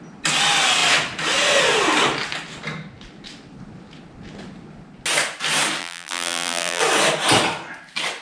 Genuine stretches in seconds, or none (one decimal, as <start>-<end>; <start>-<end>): 0.0-5.8; 6.8-8.2